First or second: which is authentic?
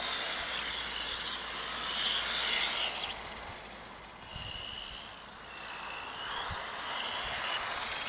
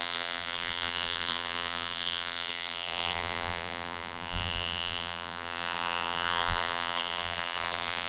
first